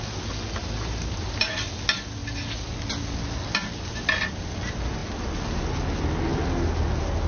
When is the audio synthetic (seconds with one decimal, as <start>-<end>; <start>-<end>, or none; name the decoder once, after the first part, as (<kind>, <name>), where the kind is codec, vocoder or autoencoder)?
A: 0.6-1.5 (vocoder, BigVGAN v2)